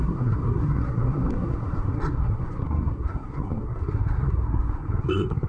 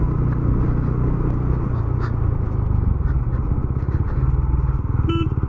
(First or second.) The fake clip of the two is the first